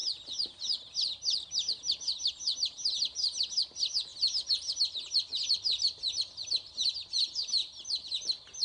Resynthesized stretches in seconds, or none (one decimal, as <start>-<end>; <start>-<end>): none